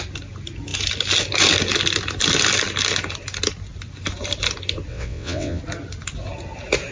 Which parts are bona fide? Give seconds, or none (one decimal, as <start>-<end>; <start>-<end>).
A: 0.0-4.9; 5.6-6.9